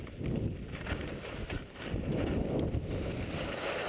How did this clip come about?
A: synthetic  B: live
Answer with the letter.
B